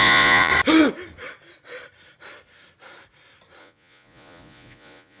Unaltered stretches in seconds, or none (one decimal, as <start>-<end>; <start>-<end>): 0.5-3.6